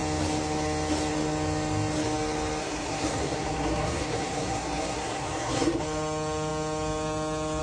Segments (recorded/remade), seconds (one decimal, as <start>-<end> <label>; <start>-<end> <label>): 0.0-2.6 recorded; 2.6-5.8 remade; 5.8-7.6 recorded